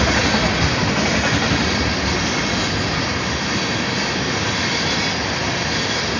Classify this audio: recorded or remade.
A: recorded